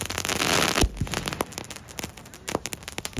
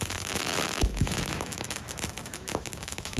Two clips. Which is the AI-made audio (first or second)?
second